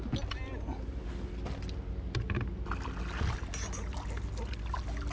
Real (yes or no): yes